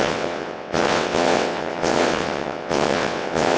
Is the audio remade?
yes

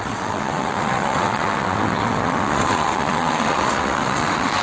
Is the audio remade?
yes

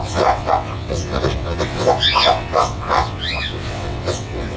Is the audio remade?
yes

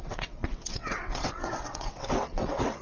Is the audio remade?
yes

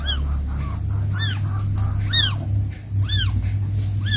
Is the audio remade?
no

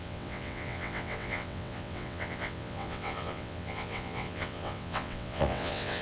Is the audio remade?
yes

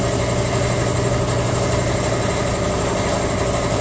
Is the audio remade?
no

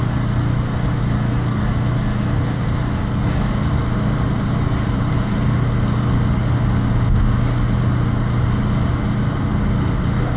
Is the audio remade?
no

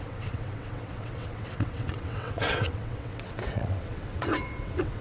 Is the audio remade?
yes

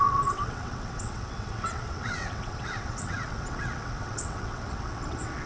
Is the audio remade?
yes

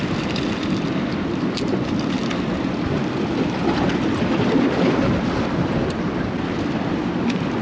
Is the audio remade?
no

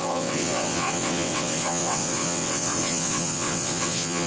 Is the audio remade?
yes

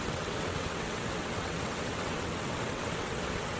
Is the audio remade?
yes